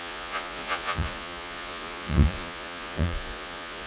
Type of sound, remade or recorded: remade